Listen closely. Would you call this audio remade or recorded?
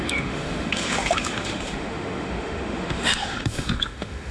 remade